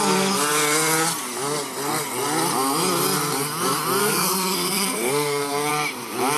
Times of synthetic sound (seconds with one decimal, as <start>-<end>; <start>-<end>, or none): 4.0-5.7